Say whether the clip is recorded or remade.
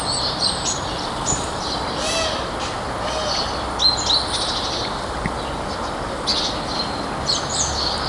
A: recorded